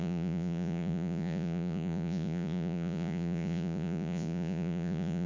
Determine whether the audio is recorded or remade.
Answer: remade